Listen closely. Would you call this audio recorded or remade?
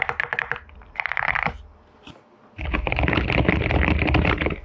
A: recorded